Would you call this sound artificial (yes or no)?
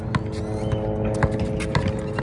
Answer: no